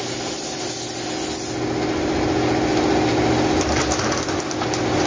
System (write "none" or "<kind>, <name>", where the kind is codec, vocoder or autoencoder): none